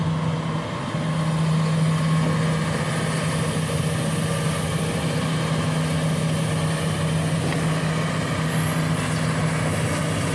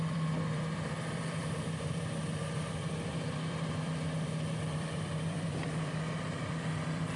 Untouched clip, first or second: first